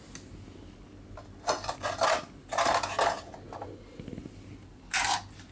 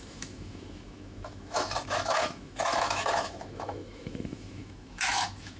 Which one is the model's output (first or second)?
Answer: second